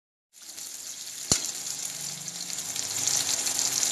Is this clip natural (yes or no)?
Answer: yes